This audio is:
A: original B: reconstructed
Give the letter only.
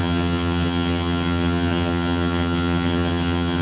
B